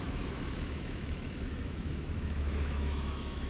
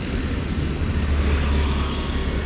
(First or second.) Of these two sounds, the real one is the second